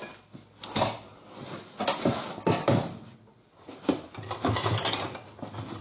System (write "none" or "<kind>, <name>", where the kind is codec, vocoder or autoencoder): none